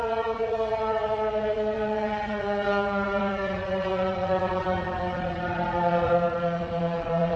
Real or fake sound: fake